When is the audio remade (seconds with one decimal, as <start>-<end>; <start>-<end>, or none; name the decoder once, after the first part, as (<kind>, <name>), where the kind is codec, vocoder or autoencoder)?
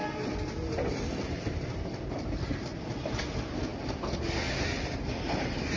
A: 2.6-3.7 (vocoder, BigVGAN v2); 4.5-5.8